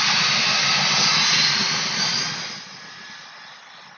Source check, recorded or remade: recorded